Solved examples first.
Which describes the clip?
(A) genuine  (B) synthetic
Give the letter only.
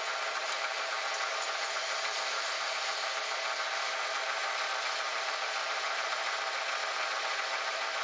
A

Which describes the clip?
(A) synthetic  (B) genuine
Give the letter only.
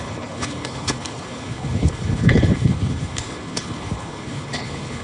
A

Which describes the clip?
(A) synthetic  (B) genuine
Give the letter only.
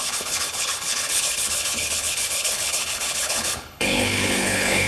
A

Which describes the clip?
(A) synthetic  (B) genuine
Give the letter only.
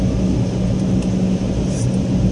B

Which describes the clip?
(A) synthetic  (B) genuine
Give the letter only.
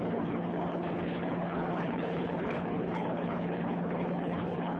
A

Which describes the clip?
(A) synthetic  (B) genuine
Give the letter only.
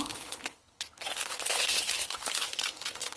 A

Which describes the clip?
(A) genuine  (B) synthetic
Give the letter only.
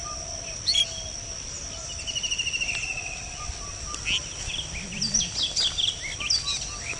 A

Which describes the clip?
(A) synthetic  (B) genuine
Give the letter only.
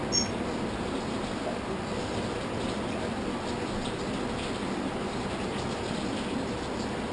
B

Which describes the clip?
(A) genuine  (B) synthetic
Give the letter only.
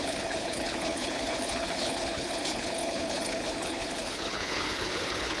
B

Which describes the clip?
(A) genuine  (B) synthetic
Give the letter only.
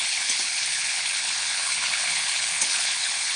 B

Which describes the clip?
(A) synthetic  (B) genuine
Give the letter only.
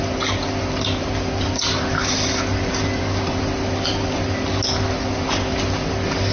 B